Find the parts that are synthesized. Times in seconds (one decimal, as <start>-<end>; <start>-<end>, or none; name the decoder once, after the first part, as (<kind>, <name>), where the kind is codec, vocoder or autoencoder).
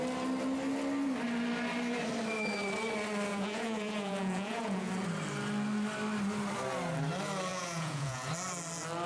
3.3-4.9 (vocoder, Vocos); 7.5-8.3